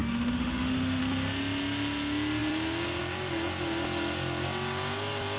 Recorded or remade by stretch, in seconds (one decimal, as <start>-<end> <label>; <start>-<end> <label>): 0.0-1.0 remade; 1.0-5.4 recorded